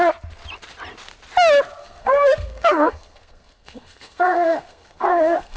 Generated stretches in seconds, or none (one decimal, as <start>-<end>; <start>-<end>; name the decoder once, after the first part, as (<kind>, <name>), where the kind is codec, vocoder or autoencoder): 1.8-5.6 (codec, SNAC)